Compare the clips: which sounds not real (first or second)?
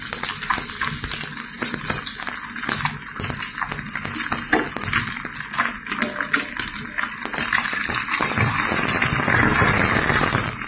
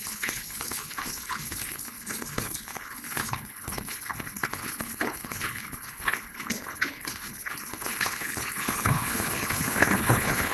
second